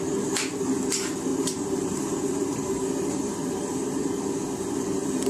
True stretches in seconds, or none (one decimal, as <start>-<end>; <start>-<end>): 0.0-1.3; 4.0-5.3

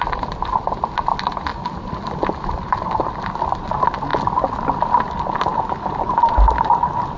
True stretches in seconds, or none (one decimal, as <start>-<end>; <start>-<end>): 0.0-1.5; 3.2-7.2

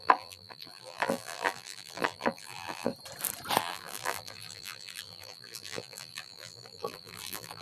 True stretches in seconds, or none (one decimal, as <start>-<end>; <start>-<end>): 2.9-3.6

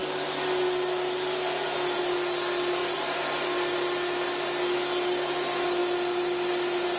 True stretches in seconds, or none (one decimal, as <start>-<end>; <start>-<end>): 0.0-7.0

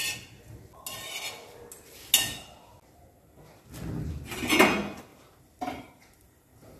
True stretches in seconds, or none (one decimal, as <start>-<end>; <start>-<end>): 0.0-5.1

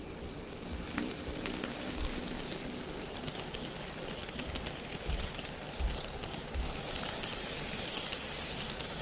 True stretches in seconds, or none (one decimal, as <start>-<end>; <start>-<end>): 4.2-8.5

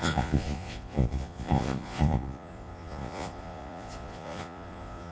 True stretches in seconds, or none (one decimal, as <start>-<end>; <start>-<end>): none